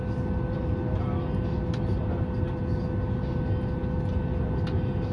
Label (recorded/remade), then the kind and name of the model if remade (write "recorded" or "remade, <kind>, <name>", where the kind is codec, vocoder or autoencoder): recorded